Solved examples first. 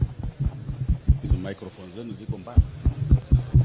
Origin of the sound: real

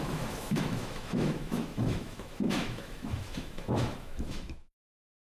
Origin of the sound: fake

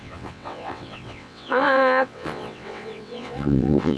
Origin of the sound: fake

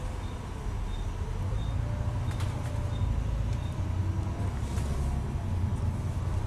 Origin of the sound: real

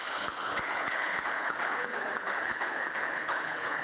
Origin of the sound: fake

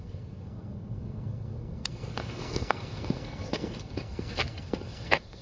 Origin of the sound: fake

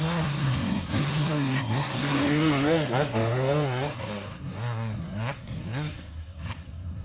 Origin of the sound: fake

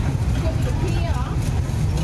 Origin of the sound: real